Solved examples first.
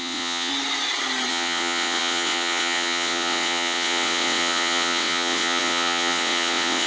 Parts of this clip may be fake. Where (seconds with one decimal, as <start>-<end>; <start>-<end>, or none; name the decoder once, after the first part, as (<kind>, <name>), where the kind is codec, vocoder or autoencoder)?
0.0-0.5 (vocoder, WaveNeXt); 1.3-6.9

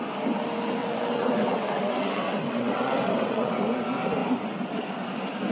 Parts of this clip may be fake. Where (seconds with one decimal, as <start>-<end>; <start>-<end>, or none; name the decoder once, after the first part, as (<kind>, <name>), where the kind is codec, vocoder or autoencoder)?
0.8-3.5 (vocoder, WaveNeXt)

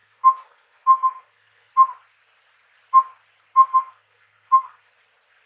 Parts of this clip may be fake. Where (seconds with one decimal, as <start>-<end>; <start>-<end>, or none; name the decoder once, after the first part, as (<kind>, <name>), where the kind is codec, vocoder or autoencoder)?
0.0-1.7 (codec, SNAC); 3.7-4.9

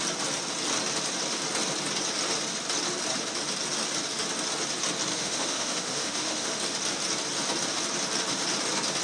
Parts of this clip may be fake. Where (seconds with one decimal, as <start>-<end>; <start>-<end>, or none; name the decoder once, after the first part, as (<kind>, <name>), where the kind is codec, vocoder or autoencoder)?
5.1-6.6 (autoencoder, DAC-VAE)

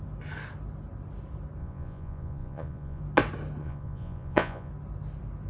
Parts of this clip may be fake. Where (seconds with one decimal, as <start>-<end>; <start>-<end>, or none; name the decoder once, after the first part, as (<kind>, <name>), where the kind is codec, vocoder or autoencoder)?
1.6-3.0 (vocoder, Vocos); 3.6-4.7

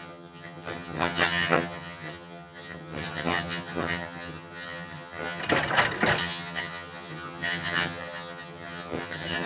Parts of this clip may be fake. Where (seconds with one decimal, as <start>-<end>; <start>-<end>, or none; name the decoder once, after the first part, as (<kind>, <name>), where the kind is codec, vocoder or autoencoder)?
0.0-5.4 (vocoder, HiFi-GAN); 6.2-9.5